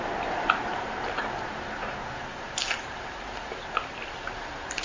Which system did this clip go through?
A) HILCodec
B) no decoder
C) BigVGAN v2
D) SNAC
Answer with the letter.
C